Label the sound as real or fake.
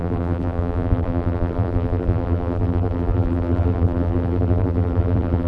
fake